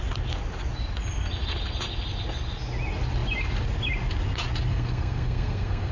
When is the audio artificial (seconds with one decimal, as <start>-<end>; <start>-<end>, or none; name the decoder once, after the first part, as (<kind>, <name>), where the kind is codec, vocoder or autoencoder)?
4.7-5.9 (codec, SNAC)